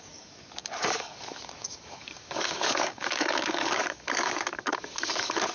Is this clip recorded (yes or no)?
no